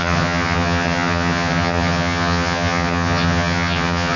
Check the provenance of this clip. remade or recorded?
remade